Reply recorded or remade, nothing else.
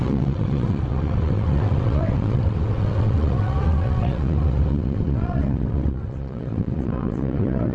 remade